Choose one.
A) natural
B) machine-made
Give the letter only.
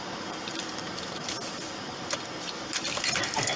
B